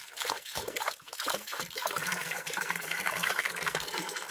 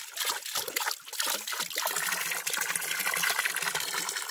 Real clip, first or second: second